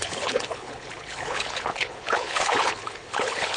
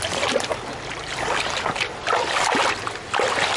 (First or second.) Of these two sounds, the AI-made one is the first